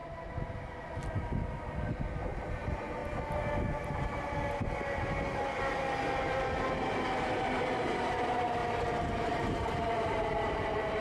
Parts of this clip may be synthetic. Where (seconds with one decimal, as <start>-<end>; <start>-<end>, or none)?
2.5-3.0; 7.8-8.6; 9.2-11.0